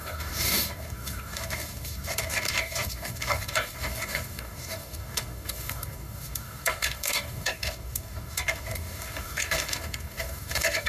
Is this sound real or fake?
fake